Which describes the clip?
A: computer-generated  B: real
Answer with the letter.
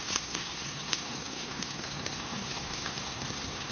A